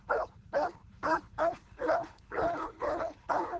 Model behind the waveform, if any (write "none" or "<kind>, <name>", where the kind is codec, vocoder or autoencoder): codec, HILCodec